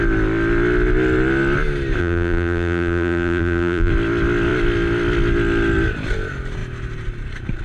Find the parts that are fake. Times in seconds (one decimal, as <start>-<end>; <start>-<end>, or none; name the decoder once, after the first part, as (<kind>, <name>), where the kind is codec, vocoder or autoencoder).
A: 2.0-3.9 (vocoder, BigVGAN v2)